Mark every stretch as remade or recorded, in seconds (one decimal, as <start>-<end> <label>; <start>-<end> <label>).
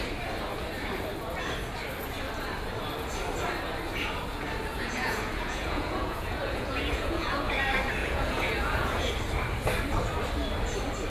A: 0.0-4.7 recorded; 4.7-7.6 remade; 7.6-8.0 recorded; 8.0-9.1 remade; 9.1-11.1 recorded